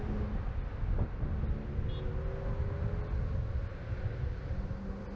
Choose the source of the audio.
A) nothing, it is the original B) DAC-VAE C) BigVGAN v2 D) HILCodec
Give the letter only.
A